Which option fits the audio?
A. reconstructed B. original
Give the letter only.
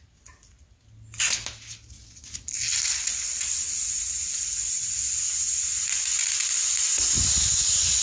B